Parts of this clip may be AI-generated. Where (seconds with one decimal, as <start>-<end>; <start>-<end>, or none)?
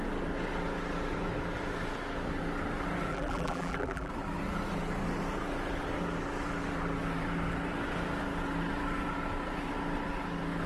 3.1-4.1